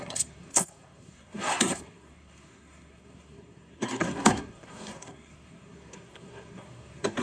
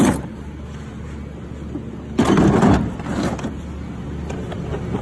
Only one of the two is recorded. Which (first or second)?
second